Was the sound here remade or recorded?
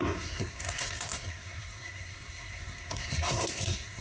remade